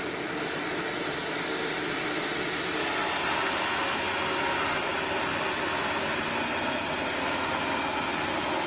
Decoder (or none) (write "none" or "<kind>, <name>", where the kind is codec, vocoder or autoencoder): none